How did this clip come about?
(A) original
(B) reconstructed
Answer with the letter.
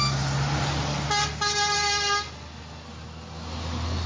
A